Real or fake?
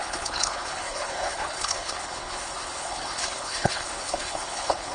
fake